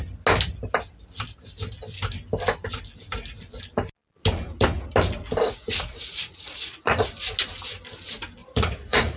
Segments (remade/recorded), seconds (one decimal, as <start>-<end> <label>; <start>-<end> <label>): 0.0-5.4 recorded; 5.4-7.1 remade; 7.1-8.4 recorded; 8.4-9.2 remade